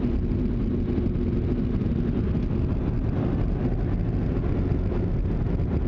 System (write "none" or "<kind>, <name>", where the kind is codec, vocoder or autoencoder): none